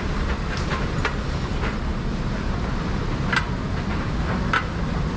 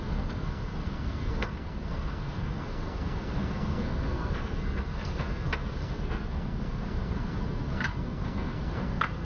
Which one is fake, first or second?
second